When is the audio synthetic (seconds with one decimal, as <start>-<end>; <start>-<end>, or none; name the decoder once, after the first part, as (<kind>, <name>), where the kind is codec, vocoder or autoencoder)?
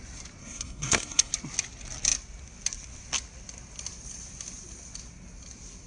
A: 0.4-1.3 (codec, SNAC)